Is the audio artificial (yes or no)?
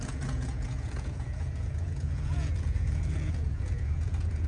yes